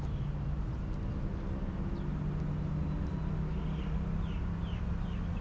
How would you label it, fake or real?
real